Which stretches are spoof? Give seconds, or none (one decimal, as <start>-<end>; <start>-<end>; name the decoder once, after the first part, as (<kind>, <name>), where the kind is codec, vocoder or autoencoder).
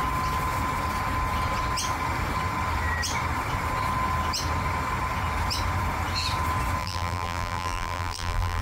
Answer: 6.8-8.6 (vocoder, BigVGAN v2)